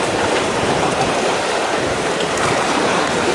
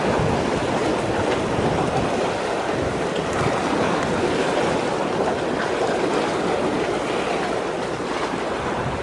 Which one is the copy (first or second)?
first